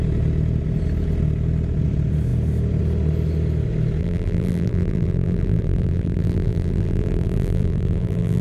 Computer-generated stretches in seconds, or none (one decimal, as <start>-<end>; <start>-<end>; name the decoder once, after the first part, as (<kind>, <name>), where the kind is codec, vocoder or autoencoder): 4.0-8.4 (vocoder, BigVGAN v2)